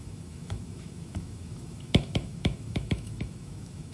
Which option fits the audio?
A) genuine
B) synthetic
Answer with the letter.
B